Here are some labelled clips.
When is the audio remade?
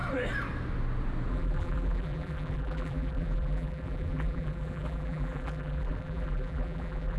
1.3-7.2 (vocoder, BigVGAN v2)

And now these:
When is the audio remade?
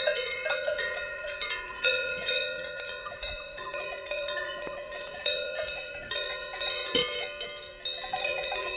0.0-7.0 (vocoder, Vocos); 8.1-8.8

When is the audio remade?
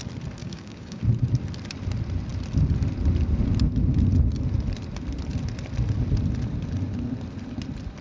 0.4-1.0 (codec, DAC)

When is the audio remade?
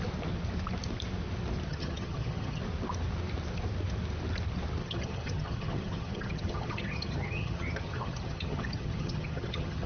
1.7-2.6 (vocoder, HiFi-GAN); 4.8-9.9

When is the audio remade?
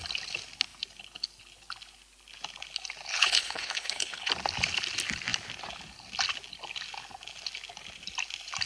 3.1-4.3 (codec, HILCodec)